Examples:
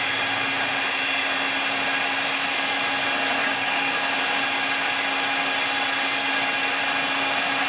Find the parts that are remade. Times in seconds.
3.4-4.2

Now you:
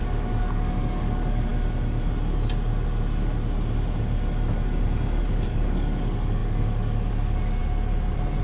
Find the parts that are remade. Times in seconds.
0.0-1.5; 5.2-7.6

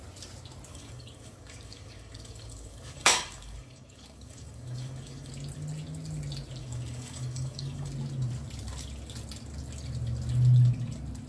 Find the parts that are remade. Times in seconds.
0.7-5.3; 6.6-7.9

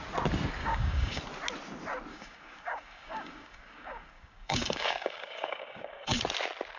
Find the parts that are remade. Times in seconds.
0.6-1.2; 2.1-6.2

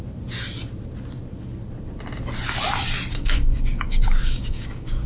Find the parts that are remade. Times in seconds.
3.1-5.1